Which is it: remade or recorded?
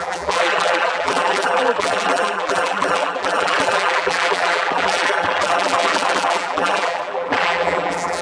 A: remade